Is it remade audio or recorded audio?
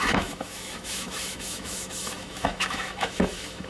remade